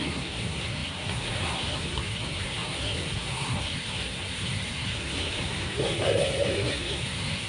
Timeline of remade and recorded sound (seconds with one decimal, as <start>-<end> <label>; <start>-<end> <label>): 0.0-7.5 remade